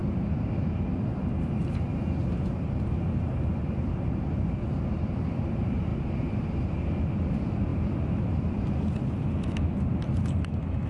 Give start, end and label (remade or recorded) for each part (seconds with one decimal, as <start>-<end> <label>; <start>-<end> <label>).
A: 0.0-0.8 remade; 0.8-2.2 recorded; 2.2-4.0 remade; 4.0-7.7 recorded; 7.7-8.7 remade; 8.7-10.9 recorded